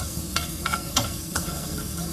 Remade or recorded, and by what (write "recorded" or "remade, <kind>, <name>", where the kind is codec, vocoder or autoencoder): remade, codec, SNAC